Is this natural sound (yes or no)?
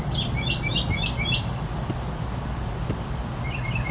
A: yes